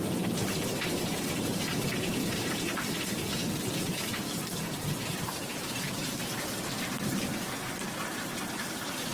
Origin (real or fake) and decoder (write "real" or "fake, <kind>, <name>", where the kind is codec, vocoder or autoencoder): fake, vocoder, BigVGAN v2